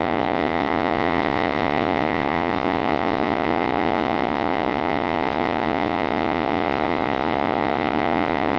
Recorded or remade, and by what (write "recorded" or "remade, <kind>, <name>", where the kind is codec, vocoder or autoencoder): remade, vocoder, Vocos